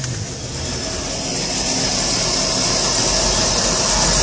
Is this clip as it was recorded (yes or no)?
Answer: yes